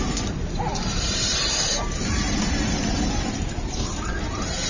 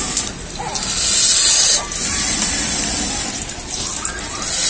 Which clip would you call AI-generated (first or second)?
first